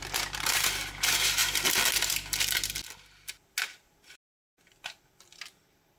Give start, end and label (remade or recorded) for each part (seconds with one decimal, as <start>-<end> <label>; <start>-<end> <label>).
0.0-6.0 recorded